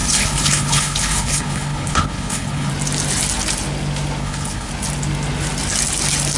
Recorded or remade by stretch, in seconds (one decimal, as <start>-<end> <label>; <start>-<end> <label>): 0.0-2.7 remade; 2.7-4.2 recorded; 4.2-4.7 remade; 4.7-6.4 recorded